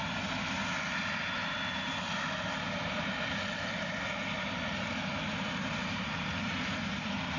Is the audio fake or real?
real